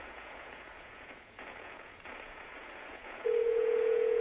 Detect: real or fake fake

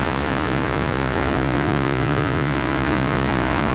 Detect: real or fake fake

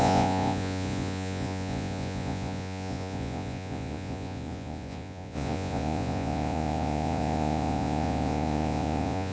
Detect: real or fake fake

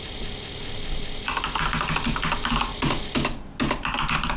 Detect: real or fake real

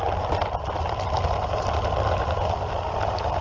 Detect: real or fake real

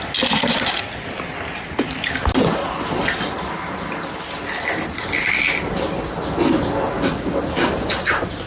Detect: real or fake real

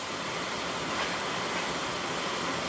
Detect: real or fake real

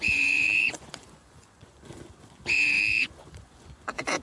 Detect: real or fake fake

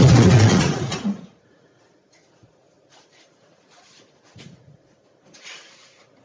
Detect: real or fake fake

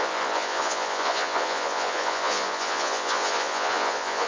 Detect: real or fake fake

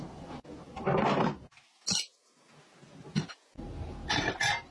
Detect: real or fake real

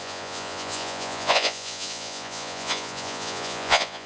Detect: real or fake fake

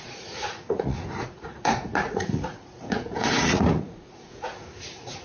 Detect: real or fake fake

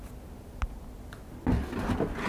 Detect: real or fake real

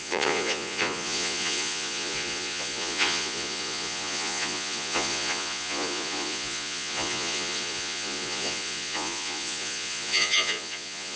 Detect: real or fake fake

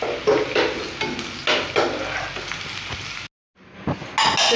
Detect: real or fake real